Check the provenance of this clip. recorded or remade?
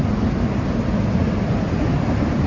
recorded